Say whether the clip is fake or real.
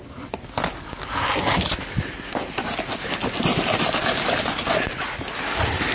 real